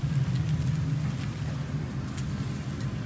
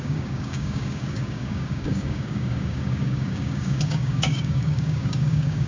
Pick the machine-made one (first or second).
second